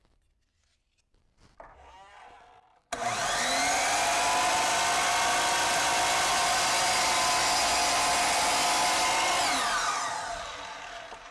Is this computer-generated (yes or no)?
no